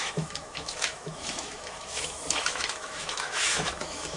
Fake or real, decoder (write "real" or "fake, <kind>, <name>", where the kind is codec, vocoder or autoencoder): fake, autoencoder, DAC-VAE